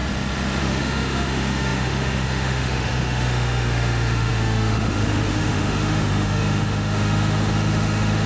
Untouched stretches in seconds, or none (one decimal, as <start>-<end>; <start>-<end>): 0.0-0.6